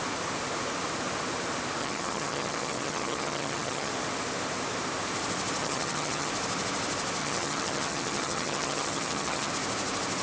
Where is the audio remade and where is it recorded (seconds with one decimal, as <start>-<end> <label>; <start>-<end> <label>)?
0.0-1.8 recorded; 1.8-3.9 remade; 3.9-5.6 recorded; 5.6-6.3 remade; 6.3-7.2 recorded; 7.2-9.5 remade; 9.5-10.2 recorded